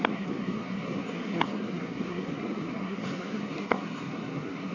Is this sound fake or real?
fake